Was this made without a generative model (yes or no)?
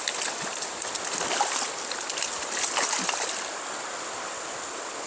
yes